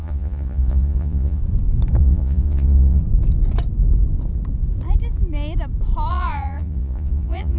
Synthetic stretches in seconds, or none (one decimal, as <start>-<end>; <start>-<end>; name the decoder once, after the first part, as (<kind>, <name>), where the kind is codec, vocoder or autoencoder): 0.0-1.4 (vocoder, Vocos); 2.0-3.0; 6.1-7.6

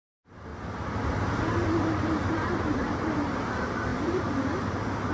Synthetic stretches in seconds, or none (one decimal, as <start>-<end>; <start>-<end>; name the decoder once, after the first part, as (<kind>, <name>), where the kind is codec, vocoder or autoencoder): 0.0-0.5 (vocoder, BigVGAN v2); 1.7-5.1

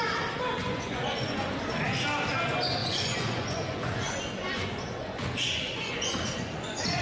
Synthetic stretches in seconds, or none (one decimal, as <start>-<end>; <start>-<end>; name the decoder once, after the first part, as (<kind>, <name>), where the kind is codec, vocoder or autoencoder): 0.6-1.5 (vocoder, Vocos); 2.8-7.0

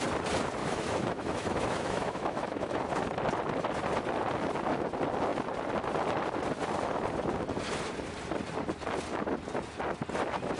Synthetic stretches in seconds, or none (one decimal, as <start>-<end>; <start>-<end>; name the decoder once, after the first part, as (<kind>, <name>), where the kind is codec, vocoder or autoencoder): 0.6-2.8 (autoencoder, DAC-VAE)

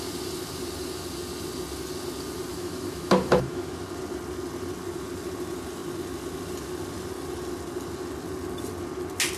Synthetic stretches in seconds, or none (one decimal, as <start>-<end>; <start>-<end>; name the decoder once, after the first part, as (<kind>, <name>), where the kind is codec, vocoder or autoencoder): 2.5-3.8 (autoencoder, DAC-VAE)

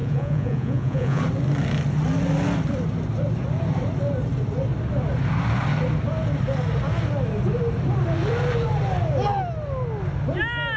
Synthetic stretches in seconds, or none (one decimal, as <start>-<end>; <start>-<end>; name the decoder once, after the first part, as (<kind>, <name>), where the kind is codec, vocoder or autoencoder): 0.0-1.2 (vocoder, Vocos)